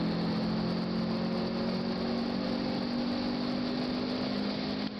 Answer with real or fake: real